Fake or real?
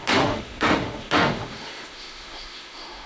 fake